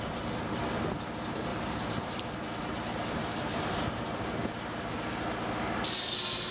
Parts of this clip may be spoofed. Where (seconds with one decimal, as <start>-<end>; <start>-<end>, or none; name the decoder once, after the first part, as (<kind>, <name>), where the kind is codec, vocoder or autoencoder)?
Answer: 1.5-2.3 (vocoder, BigVGAN v2); 3.2-4.2